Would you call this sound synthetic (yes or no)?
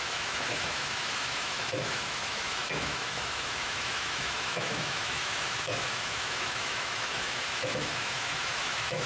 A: yes